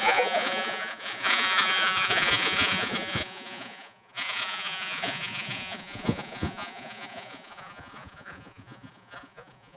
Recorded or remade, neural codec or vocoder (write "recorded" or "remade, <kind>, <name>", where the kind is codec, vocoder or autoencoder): remade, vocoder, Vocos